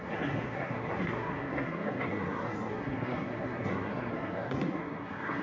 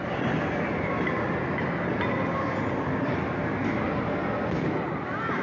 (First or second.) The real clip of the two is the second